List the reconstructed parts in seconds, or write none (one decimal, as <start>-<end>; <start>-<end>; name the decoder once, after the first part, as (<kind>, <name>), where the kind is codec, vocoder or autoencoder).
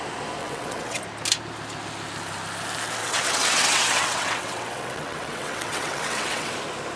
0.4-1.0 (vocoder, WaveNeXt); 3.0-6.5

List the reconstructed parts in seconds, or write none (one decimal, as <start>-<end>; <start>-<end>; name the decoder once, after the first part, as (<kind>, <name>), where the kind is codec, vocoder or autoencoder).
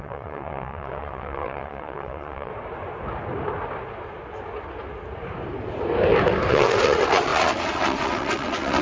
0.0-2.5 (vocoder, WaveNeXt); 6.5-8.8